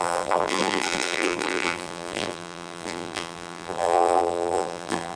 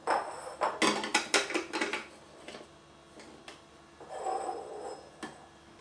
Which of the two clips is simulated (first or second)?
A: first